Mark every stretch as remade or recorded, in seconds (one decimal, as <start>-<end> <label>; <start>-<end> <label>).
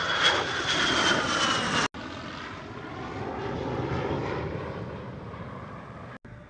0.0-6.5 recorded